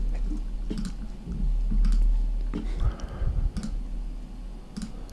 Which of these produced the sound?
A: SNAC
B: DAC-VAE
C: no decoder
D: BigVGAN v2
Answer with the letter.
C